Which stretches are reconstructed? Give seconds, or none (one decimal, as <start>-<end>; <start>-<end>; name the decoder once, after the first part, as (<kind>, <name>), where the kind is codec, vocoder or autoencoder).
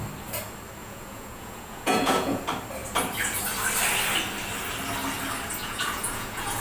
0.8-2.4 (vocoder, Vocos); 5.6-6.6